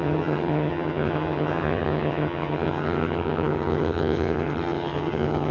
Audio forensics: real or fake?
fake